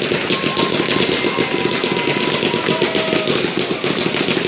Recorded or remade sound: recorded